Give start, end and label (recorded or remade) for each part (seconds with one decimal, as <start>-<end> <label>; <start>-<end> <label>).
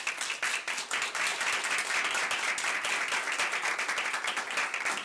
0.0-5.0 recorded